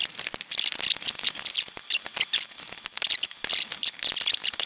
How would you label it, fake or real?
real